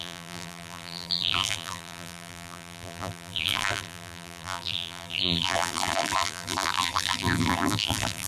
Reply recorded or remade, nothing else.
remade